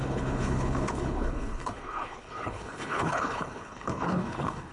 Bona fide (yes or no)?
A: no